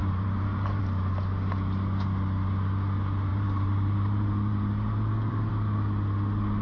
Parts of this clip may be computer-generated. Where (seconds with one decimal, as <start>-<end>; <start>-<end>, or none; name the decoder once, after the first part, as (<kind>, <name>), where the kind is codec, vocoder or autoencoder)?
0.0-0.8 (vocoder, BigVGAN v2); 3.3-5.5